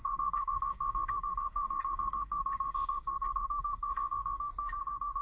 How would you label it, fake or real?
fake